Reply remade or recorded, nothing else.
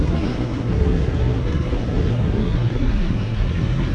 remade